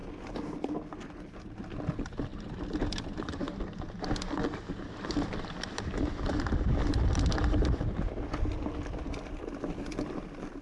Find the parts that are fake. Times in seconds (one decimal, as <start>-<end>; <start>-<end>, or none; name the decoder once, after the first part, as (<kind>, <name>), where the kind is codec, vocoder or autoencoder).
none